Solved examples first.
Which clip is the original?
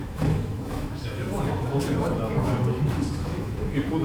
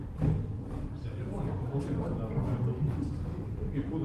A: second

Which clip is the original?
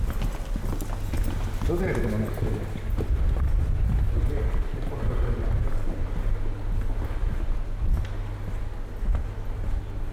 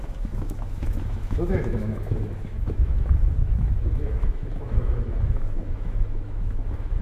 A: first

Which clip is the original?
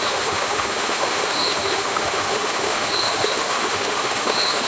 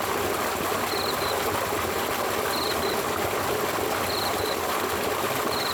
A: second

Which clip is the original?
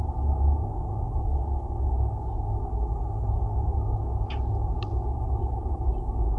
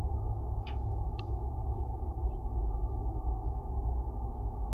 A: first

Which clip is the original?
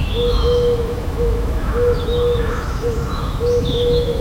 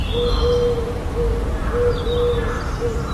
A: second